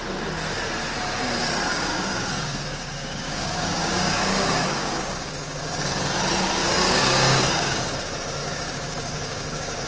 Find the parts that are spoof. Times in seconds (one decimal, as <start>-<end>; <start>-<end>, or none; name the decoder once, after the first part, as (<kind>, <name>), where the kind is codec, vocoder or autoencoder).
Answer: 1.7-6.0 (codec, DAC); 6.6-7.8; 8.4-9.9